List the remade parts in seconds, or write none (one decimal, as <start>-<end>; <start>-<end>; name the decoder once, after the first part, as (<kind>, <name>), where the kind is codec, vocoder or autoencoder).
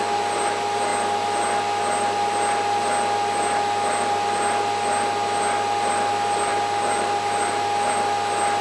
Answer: none